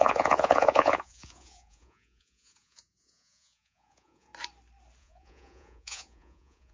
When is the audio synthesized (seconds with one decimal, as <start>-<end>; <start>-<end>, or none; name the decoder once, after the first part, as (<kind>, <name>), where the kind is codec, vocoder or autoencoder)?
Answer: 0.0-4.3 (vocoder, Vocos); 5.0-6.7